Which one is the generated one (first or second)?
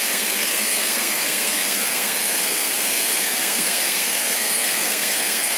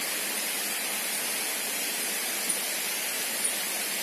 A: first